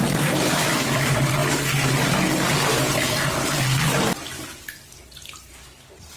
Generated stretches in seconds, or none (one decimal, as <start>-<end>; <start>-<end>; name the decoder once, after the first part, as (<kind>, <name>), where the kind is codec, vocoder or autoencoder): 0.0-1.4 (vocoder, BigVGAN v2); 3.8-6.2